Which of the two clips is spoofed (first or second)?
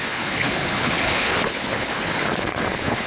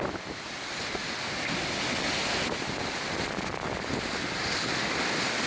first